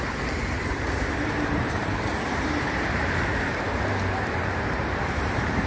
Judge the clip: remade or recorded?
remade